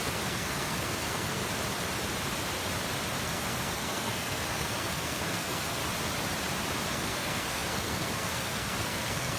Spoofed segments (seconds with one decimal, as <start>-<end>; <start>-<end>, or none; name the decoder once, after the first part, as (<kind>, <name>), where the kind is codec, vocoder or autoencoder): 0.0-1.4 (codec, SNAC); 3.2-5.8; 6.9-9.4